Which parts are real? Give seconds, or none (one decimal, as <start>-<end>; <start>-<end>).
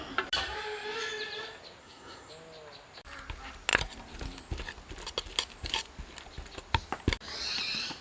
0.0-1.8; 2.3-8.0